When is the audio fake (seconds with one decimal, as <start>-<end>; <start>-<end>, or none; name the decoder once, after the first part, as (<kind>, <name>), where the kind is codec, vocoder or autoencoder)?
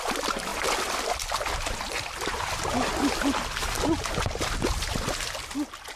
none